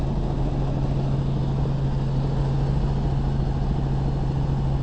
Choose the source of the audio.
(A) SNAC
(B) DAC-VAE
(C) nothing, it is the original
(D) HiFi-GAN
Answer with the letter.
C